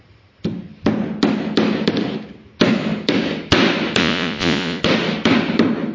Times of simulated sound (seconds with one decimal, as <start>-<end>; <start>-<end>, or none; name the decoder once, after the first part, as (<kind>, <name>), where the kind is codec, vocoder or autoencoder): 4.0-4.8 (vocoder, Vocos)